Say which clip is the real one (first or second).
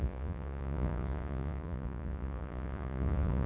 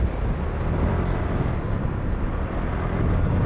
second